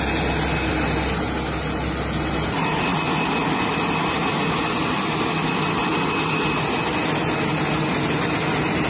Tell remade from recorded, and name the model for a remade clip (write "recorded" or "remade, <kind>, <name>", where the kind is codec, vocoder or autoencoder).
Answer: recorded